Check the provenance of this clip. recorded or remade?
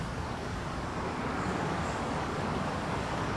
remade